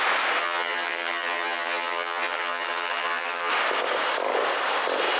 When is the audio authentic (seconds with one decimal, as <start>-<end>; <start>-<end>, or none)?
0.0-0.4; 3.5-5.2